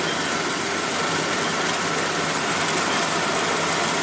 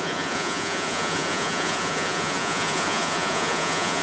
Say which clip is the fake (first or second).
second